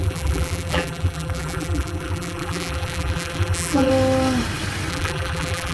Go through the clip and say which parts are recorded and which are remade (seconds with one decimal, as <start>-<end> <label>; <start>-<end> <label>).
0.0-3.9 remade; 3.9-4.9 recorded; 4.9-5.7 remade